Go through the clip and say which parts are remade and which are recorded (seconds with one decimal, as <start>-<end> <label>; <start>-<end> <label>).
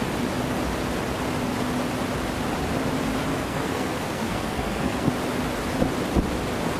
0.0-3.3 recorded; 3.3-5.1 remade; 5.1-6.8 recorded